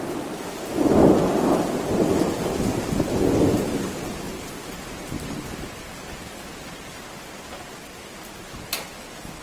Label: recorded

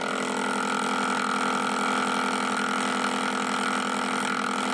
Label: recorded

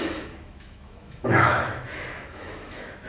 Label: remade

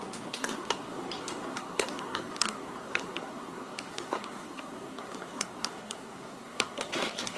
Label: remade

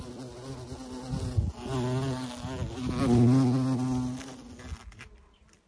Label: recorded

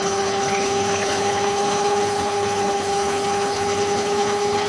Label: remade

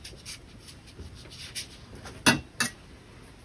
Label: recorded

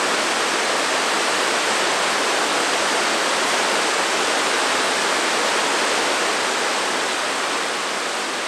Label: recorded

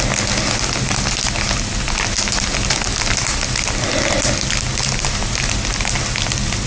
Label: recorded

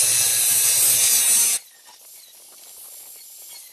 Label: recorded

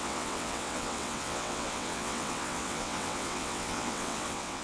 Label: remade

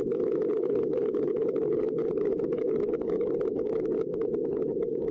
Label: remade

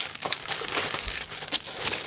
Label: remade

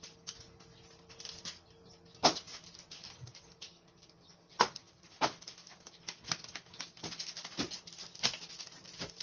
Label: recorded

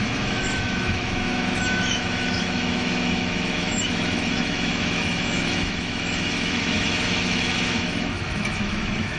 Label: remade